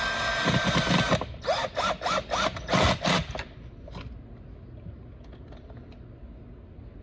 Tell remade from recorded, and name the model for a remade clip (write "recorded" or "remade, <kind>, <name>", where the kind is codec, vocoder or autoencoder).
recorded